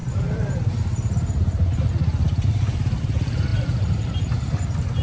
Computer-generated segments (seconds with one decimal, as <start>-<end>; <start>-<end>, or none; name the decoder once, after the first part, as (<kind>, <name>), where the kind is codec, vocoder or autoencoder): 0.0-5.0 (vocoder, BigVGAN v2)